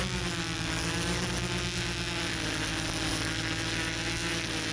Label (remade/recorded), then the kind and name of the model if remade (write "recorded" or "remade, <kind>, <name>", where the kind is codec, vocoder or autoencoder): recorded